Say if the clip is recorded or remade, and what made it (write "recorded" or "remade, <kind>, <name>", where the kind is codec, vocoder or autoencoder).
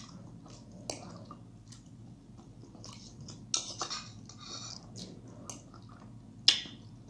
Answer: recorded